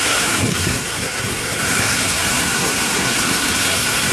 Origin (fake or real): fake